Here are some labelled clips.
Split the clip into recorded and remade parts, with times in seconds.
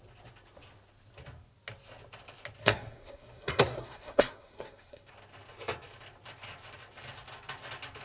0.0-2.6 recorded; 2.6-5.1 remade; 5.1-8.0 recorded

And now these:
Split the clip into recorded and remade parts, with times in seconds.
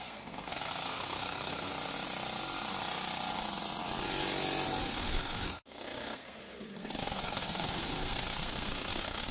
0.0-1.7 remade; 1.7-4.8 recorded; 4.8-9.3 remade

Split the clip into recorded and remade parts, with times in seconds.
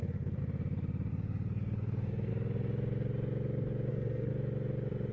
0.0-0.4 remade; 0.4-1.1 recorded; 1.1-2.3 remade; 2.3-3.9 recorded; 3.9-4.3 remade; 4.3-5.1 recorded